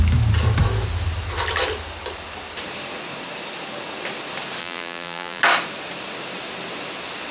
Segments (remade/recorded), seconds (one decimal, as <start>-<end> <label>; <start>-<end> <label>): 0.0-4.6 recorded; 4.6-5.4 remade; 5.4-7.3 recorded